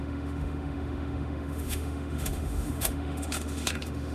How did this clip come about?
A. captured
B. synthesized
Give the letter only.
B